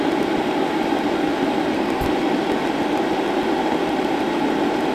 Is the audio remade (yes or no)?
no